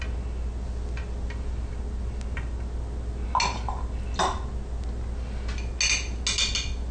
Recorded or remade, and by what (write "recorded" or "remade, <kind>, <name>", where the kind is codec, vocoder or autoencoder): recorded